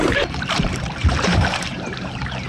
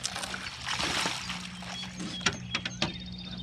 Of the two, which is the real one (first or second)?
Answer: second